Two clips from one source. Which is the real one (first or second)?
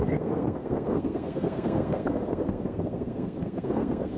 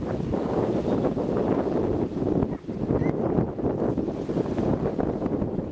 second